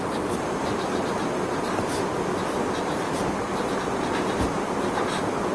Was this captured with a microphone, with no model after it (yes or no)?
yes